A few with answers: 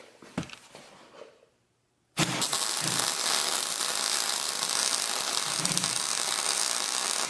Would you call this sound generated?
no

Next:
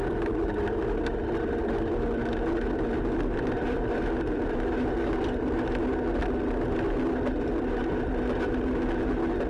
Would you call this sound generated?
no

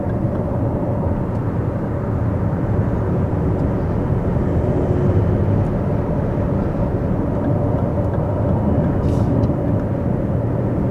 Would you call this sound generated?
no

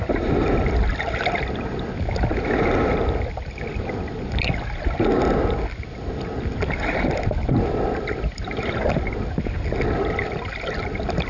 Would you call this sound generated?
no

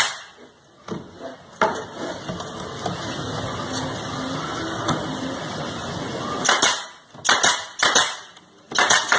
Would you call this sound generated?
no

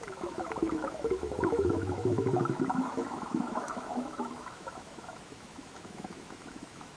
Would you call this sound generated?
yes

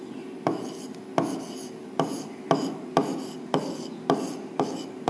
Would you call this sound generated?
no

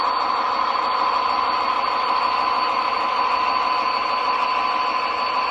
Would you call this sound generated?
no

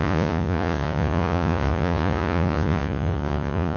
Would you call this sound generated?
yes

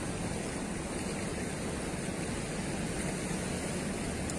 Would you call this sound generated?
no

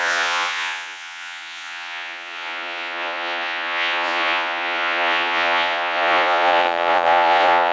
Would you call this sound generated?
yes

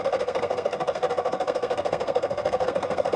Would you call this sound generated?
yes